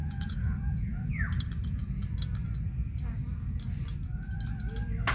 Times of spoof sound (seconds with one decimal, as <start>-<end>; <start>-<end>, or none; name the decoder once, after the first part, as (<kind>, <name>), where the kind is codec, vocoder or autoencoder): 0.0-1.1 (vocoder, Vocos)